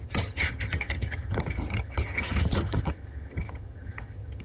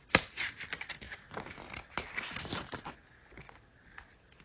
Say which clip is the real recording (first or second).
second